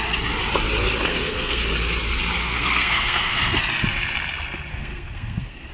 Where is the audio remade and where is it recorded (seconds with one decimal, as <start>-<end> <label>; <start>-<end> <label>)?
0.0-1.1 recorded; 1.1-1.6 remade; 1.6-2.4 recorded; 2.4-3.6 remade; 3.6-4.7 recorded; 4.7-5.7 remade